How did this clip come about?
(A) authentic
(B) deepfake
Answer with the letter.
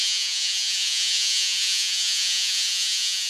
B